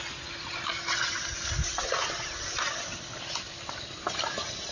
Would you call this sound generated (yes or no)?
no